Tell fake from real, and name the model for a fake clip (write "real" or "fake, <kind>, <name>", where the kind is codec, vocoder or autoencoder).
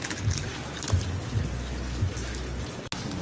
real